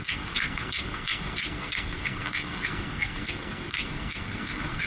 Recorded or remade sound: remade